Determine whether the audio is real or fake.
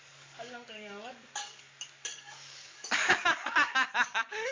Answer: fake